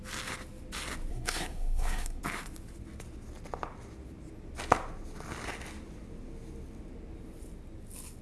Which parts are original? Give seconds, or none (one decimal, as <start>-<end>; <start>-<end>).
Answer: 0.0-1.1; 2.2-8.2